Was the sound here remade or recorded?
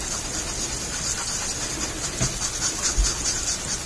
recorded